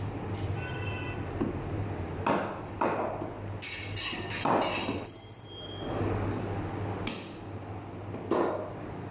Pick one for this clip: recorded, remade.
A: recorded